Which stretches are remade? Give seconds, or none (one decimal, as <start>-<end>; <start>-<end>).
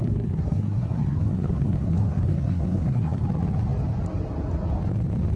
0.0-3.2